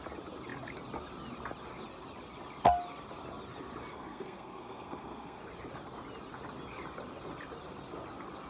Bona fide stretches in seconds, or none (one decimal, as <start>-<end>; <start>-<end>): 0.0-3.9; 5.4-8.5